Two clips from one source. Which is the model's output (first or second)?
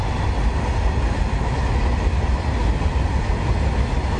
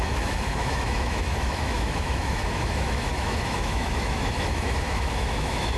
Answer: second